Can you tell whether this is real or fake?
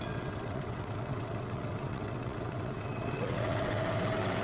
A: fake